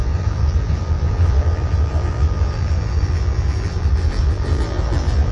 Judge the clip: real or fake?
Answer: fake